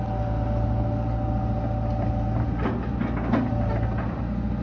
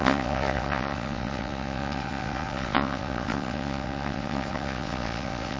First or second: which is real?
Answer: first